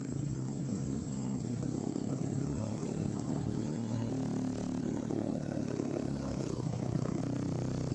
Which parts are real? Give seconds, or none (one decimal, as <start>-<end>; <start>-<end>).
4.1-4.8; 7.2-7.9